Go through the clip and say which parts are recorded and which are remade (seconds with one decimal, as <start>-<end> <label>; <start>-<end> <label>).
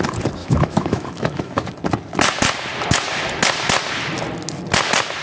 0.0-0.4 recorded; 0.4-1.7 remade; 1.7-5.2 recorded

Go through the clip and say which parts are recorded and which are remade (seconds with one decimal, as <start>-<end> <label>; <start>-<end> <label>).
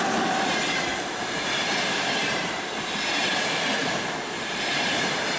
0.0-0.9 remade; 0.9-1.6 recorded; 1.6-5.4 remade